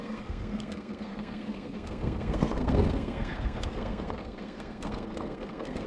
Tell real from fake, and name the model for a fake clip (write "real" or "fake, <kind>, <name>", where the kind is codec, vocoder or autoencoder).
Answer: fake, codec, SNAC